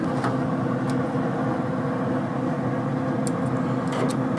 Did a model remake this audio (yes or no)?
no